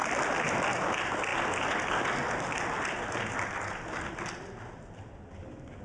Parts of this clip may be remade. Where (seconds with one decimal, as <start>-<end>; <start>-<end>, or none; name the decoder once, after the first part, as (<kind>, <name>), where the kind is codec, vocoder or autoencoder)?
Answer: none